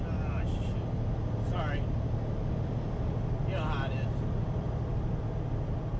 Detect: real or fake real